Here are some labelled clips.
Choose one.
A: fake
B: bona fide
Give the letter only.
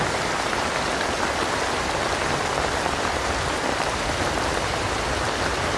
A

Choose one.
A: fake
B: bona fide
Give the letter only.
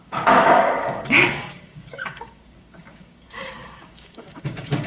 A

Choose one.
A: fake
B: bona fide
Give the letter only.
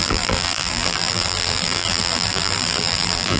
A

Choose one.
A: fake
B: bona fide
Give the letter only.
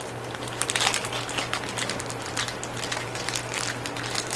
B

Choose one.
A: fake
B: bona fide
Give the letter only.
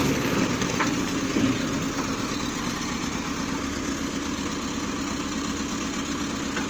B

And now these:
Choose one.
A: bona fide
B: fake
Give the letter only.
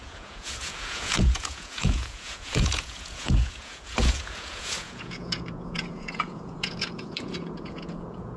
B